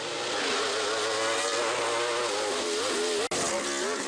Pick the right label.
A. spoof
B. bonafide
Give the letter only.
B